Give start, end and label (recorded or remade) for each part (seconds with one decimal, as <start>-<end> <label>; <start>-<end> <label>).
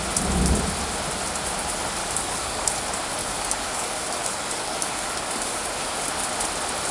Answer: 0.0-2.0 recorded; 2.0-2.7 remade; 2.7-3.2 recorded; 3.2-5.8 remade; 5.8-6.9 recorded